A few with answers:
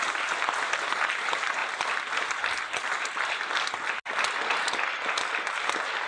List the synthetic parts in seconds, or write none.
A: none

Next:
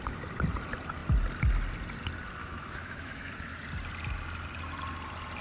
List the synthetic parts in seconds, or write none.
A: 2.4-3.3 (autoencoder, DAC-VAE)

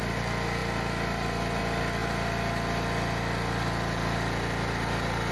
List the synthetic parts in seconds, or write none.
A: none

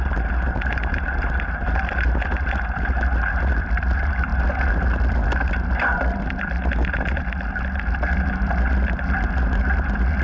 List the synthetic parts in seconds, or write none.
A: none

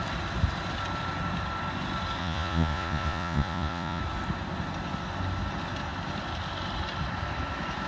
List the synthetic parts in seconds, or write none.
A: 2.2-4.0 (vocoder, Vocos)

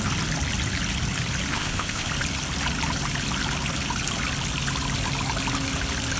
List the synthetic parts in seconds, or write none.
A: 1.5-2.1 (codec, ZipCodec)

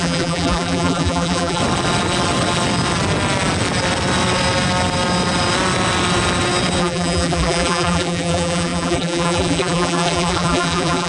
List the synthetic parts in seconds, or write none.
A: 0.0-1.6 (vocoder, BigVGAN v2); 6.8-11.1